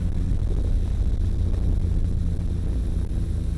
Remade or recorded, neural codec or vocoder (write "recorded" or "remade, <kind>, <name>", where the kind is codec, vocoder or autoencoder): recorded